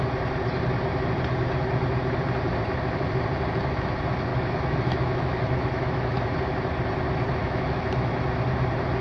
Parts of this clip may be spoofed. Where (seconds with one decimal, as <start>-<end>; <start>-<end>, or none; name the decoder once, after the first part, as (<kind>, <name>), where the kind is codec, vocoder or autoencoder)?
4.3-6.2 (autoencoder, DAC-VAE); 7.4-8.1